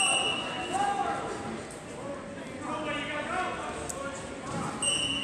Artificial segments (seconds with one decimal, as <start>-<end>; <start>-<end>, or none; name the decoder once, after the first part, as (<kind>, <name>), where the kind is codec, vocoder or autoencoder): none

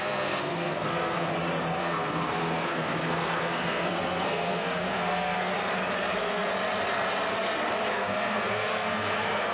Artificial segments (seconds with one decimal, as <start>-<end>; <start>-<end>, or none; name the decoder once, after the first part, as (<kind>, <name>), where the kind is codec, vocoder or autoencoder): 0.0-1.3 (codec, SNAC); 1.8-5.5; 6.1-6.5; 7.9-9.5